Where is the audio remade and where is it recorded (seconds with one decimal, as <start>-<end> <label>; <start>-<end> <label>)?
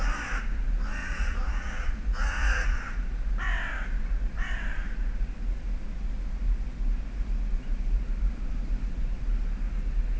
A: 0.0-1.0 recorded; 1.0-2.8 remade; 2.8-10.2 recorded